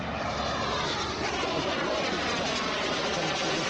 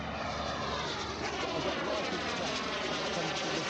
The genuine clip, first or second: second